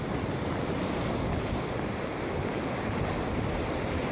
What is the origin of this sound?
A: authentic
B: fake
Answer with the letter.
A